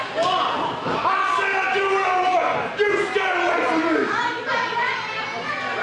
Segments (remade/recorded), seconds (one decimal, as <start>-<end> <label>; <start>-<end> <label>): 0.0-5.8 recorded